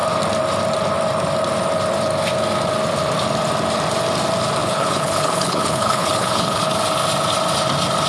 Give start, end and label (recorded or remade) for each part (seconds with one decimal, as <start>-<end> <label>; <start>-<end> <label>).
0.0-4.6 recorded; 4.6-6.6 remade; 6.6-8.1 recorded